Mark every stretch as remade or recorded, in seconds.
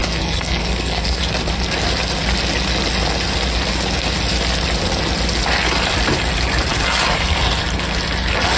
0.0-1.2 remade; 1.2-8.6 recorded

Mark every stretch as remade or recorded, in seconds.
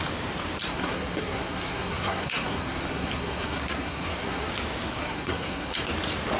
0.0-0.7 recorded; 0.7-4.5 remade; 4.5-4.9 recorded; 4.9-5.8 remade; 5.8-6.4 recorded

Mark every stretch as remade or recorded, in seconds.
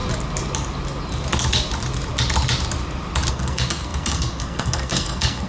0.0-3.3 recorded; 3.3-5.5 remade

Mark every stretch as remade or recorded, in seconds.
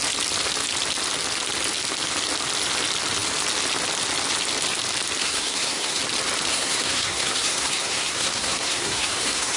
0.0-5.2 recorded; 5.2-6.0 remade; 6.0-6.5 recorded; 6.5-9.6 remade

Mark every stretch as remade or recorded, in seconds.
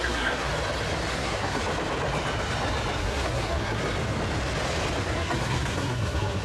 0.0-0.5 remade; 0.5-1.1 recorded; 1.1-1.6 remade; 1.6-3.0 recorded; 3.0-3.8 remade; 3.8-5.0 recorded; 5.0-6.4 remade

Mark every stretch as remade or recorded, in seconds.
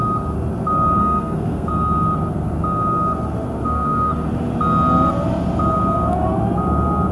0.0-1.0 recorded; 1.0-1.7 remade; 1.7-3.6 recorded; 3.6-4.1 remade; 4.1-7.1 recorded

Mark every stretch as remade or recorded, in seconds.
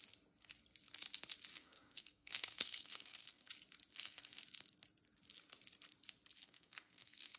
0.0-1.5 recorded; 1.5-3.5 remade; 3.5-3.9 recorded; 3.9-4.4 remade; 4.4-6.4 recorded; 6.4-7.4 remade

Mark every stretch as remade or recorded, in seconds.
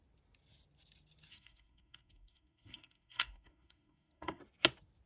0.0-1.3 recorded; 1.3-4.4 remade; 4.4-5.1 recorded